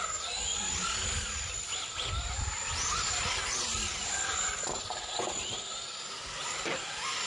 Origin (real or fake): real